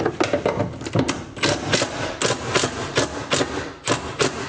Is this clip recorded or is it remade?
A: recorded